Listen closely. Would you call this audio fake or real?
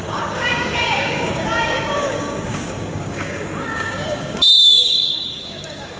fake